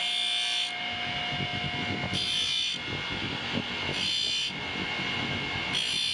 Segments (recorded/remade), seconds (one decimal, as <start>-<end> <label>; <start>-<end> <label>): 0.0-6.1 recorded